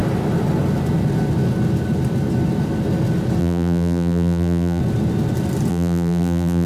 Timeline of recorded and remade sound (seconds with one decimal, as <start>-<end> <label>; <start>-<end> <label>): 0.0-3.4 recorded; 3.4-4.8 remade; 4.8-5.7 recorded; 5.7-6.7 remade